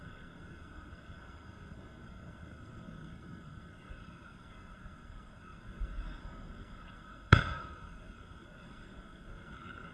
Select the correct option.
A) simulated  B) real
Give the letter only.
A